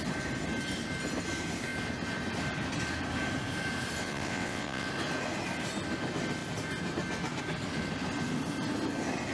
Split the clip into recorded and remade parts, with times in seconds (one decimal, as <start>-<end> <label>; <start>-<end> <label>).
0.0-4.0 recorded; 4.0-4.9 remade; 4.9-9.3 recorded